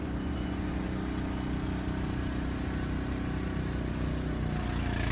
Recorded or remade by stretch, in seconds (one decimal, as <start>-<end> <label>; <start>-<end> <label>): 0.0-0.7 remade; 0.7-5.1 recorded